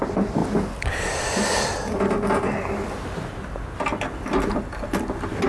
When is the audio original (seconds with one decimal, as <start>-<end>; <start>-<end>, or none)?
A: 0.0-5.5